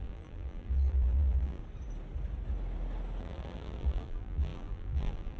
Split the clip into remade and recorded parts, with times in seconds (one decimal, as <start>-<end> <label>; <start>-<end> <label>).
0.0-1.6 remade; 1.6-3.2 recorded; 3.2-5.4 remade